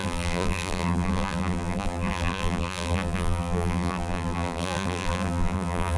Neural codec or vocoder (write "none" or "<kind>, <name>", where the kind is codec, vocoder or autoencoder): vocoder, BigVGAN v2